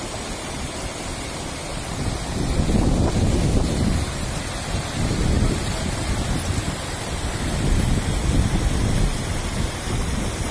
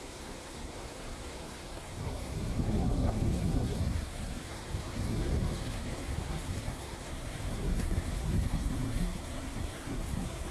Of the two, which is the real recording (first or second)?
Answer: first